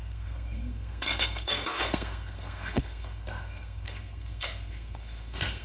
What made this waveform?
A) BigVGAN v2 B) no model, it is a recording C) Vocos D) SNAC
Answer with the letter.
D